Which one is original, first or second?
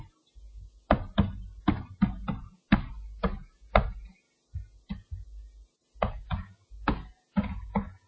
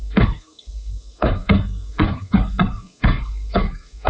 first